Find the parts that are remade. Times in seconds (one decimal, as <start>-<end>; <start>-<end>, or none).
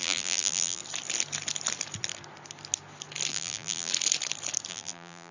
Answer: 0.0-0.8; 3.3-3.9; 4.7-5.3